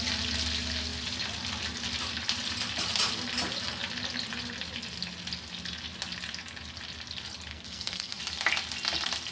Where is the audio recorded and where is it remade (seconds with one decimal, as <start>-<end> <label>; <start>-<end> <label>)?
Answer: 0.0-7.5 recorded; 7.5-8.2 remade; 8.2-9.3 recorded